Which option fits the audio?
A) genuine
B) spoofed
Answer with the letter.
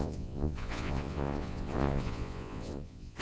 B